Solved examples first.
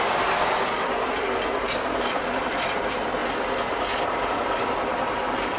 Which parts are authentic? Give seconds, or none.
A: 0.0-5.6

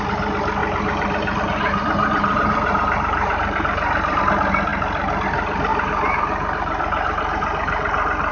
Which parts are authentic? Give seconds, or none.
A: 0.0-0.6; 4.2-5.7; 7.2-8.3

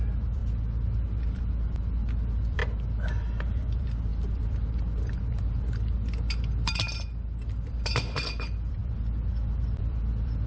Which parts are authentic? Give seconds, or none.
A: 0.4-1.2; 2.6-3.3

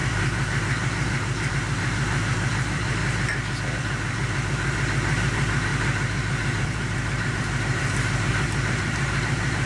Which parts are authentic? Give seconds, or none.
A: 3.0-3.8